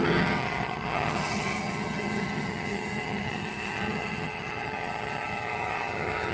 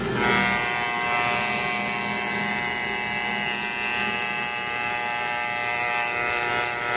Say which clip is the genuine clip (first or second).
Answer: second